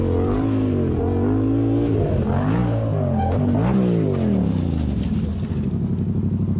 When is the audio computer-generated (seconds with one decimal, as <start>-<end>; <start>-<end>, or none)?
none